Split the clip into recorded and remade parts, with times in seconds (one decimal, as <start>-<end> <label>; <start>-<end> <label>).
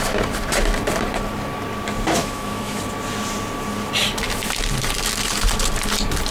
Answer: 0.0-2.2 recorded; 2.2-2.8 remade; 2.8-6.3 recorded